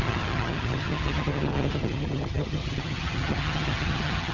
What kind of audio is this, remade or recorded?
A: remade